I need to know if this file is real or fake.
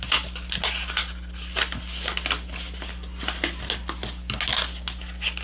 real